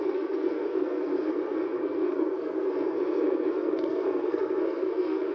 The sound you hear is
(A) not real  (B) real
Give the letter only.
A